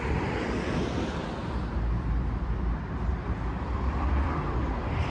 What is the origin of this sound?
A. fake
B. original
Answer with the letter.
A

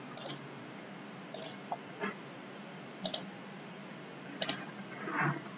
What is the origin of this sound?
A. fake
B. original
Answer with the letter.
A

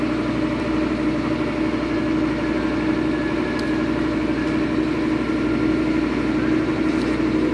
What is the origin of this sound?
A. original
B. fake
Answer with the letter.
A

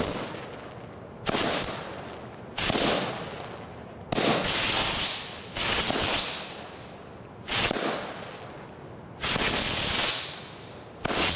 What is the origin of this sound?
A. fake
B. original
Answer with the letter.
B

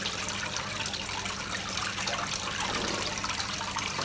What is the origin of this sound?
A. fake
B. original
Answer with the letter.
B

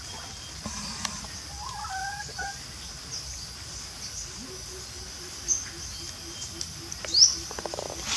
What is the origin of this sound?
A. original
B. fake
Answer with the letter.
A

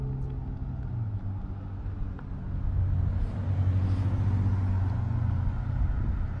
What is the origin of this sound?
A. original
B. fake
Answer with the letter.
A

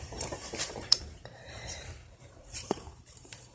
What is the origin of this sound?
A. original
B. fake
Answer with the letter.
B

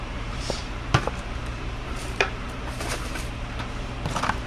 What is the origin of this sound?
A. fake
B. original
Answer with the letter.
A